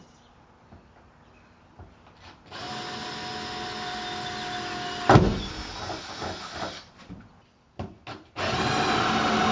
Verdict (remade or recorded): recorded